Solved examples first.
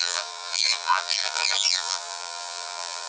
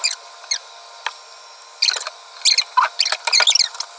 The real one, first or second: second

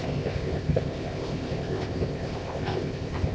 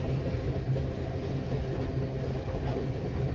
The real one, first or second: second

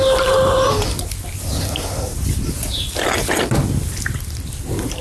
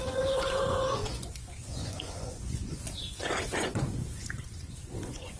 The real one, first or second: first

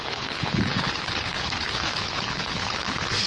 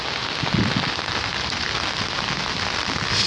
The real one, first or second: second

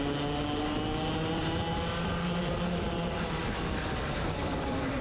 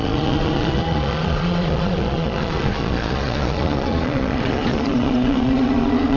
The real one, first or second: first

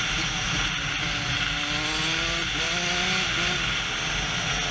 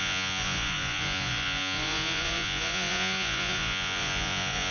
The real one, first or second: first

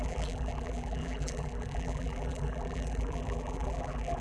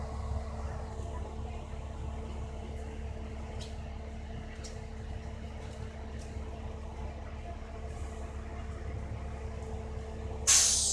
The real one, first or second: second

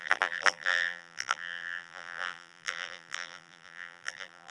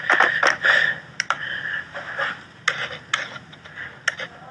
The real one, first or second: second